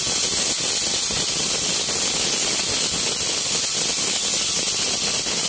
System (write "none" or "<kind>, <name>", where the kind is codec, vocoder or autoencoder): none